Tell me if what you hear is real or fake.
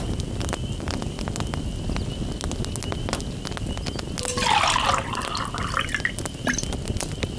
real